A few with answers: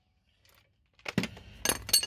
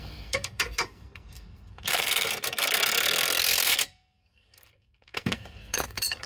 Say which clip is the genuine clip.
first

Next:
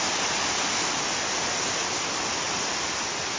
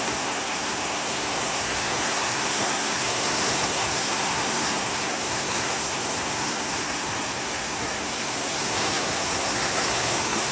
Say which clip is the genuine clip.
first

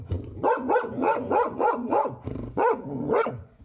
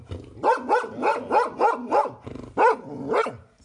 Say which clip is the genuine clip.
second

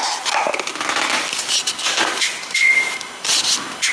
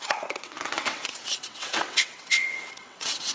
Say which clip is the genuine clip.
first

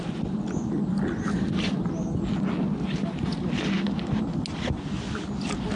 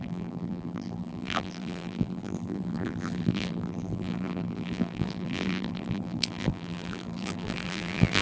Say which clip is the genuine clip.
first